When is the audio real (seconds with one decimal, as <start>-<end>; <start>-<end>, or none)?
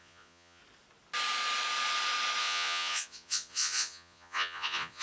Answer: 0.6-2.4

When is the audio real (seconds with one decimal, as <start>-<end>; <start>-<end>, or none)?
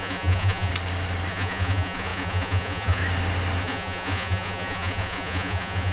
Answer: 0.7-1.3; 3.0-3.6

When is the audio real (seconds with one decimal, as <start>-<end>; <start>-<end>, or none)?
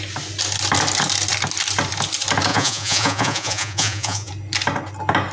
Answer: 0.0-2.5; 4.3-5.3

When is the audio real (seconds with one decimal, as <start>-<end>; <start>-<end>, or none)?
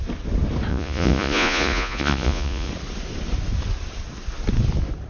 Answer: 0.0-0.7; 2.7-5.1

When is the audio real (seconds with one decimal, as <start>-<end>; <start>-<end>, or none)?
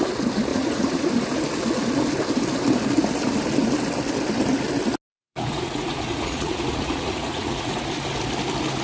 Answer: 0.0-0.5; 1.1-5.2; 7.9-8.8